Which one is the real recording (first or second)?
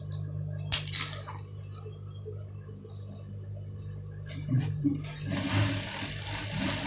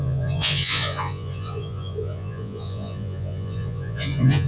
first